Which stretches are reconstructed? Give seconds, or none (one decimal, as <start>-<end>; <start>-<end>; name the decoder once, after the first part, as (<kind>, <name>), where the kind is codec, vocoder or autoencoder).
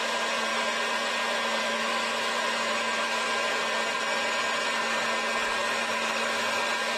1.6-3.4 (autoencoder, DAC-VAE); 5.6-6.6